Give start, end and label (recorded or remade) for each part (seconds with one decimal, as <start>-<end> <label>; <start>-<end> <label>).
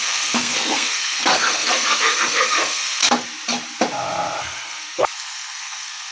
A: 0.0-3.0 remade; 3.0-4.4 recorded; 4.4-6.1 remade